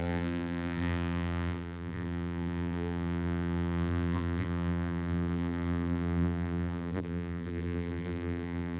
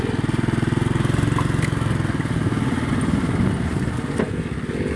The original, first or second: second